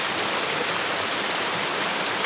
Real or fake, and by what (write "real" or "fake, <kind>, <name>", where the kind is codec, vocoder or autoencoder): real